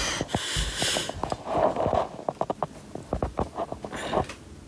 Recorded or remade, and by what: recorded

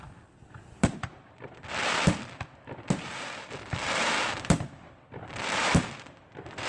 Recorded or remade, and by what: remade, vocoder, BigVGAN v2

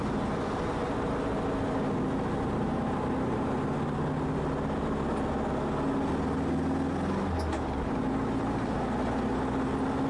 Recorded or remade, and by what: recorded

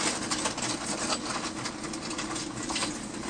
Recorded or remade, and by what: recorded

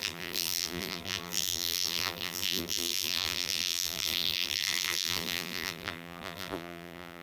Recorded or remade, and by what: remade, vocoder, BigVGAN v2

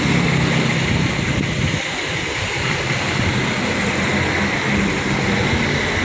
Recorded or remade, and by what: recorded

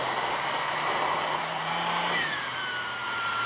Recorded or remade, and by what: remade, vocoder, BigVGAN v2